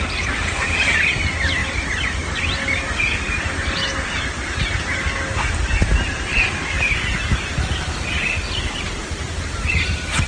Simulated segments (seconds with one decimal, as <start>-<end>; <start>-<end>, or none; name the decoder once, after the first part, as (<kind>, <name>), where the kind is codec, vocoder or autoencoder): none